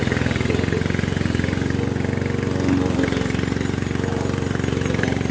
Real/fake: real